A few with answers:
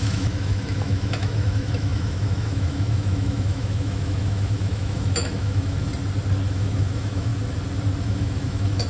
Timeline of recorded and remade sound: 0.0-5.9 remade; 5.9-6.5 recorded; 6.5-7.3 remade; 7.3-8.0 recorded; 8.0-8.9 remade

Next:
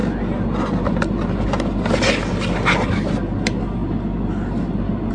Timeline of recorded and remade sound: 0.0-5.1 recorded

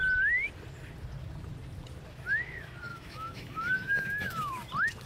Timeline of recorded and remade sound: 0.0-2.9 recorded; 2.9-4.5 remade; 4.5-5.1 recorded

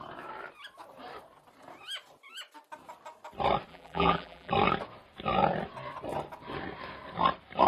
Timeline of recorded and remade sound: 0.0-3.7 recorded; 3.7-4.5 remade; 4.5-7.7 recorded

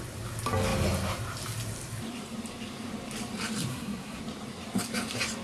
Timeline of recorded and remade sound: 0.0-3.7 recorded; 3.7-4.2 remade; 4.2-5.4 recorded